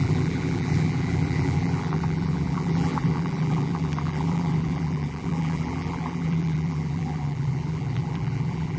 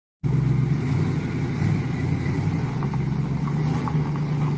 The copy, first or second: first